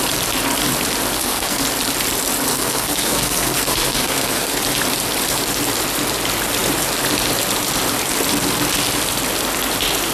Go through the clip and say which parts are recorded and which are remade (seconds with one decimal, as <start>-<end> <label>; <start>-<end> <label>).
0.0-1.1 recorded; 1.1-1.6 remade; 1.6-2.5 recorded; 2.5-4.6 remade; 4.6-10.1 recorded